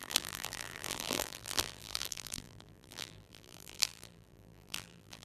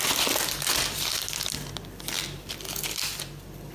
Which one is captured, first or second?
second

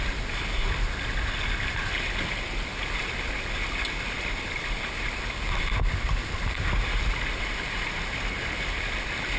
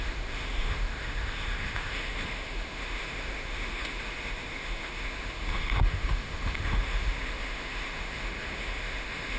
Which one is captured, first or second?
first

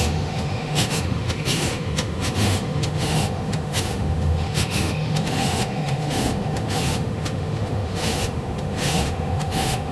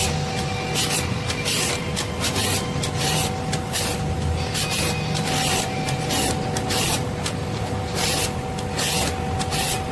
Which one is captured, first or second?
second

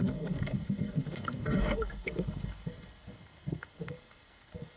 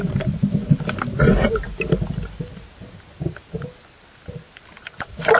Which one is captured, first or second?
second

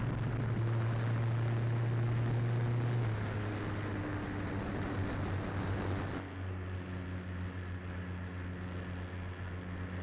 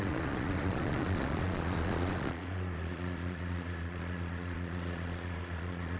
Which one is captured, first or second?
first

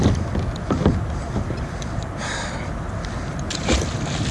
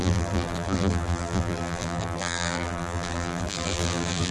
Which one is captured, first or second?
first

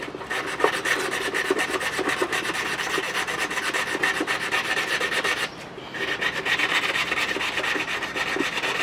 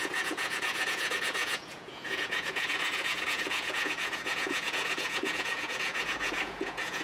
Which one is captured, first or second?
first